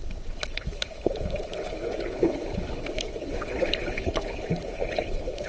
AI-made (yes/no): yes